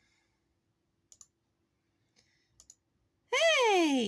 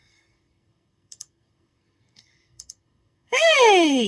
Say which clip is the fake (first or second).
second